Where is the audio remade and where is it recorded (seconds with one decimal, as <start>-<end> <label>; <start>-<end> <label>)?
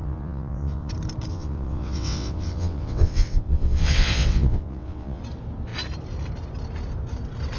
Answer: 0.0-0.9 remade; 0.9-1.3 recorded; 1.3-5.2 remade; 5.2-7.6 recorded